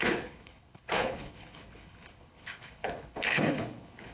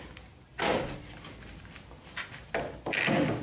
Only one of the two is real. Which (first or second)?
second